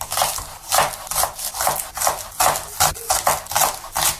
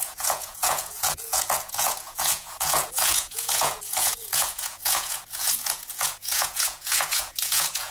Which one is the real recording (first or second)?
first